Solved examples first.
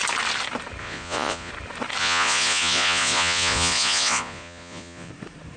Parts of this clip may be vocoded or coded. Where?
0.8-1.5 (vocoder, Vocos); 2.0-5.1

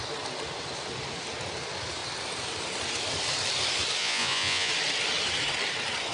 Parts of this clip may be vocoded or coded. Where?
4.0-4.7 (vocoder, Vocos)

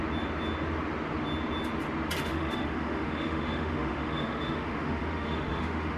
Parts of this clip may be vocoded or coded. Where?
2.2-6.0 (autoencoder, DAC-VAE)

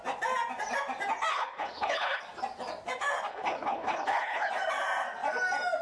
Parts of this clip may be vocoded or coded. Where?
1.3-2.2 (codec, HILCodec); 3.3-4.5

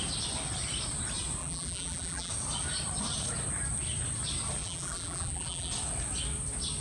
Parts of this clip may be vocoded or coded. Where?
1.4-2.3 (vocoder, BigVGAN v2); 4.6-5.7

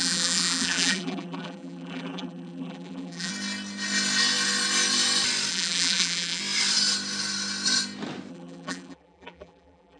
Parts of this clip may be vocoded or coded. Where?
0.0-3.3 (vocoder, BigVGAN v2); 5.5-6.4; 8.3-10.0